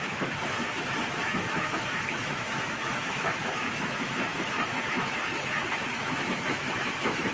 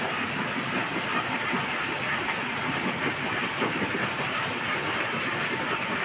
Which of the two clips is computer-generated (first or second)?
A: first